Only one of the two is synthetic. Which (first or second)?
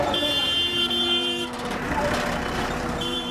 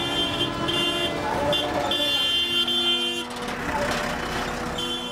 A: first